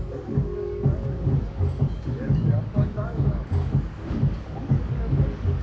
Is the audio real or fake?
fake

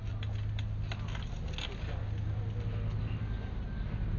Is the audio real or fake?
real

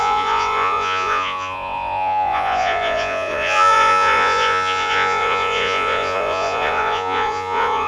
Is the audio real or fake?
fake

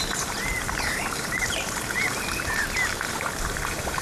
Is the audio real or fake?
fake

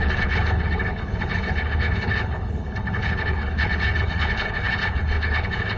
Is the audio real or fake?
fake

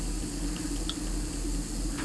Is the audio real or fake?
real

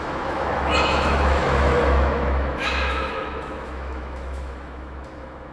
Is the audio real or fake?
fake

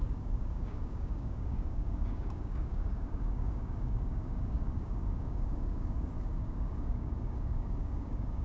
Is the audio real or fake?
fake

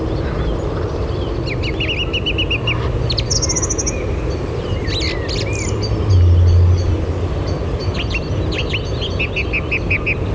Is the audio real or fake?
real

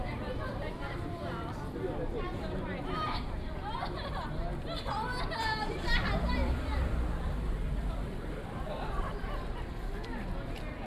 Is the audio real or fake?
fake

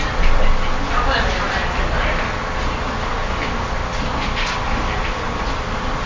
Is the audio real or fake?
real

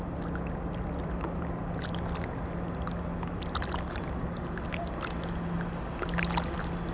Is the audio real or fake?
real